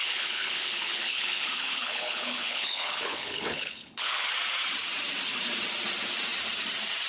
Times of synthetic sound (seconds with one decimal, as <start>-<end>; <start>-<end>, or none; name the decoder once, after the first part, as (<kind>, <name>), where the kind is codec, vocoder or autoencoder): 0.0-4.3 (codec, HILCodec)